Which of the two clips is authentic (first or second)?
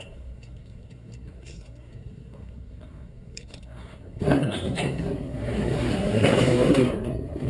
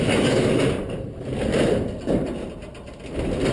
second